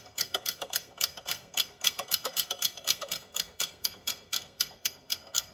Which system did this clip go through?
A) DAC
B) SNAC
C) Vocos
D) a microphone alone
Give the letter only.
B